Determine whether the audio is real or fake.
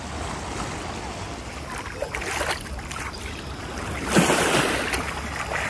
real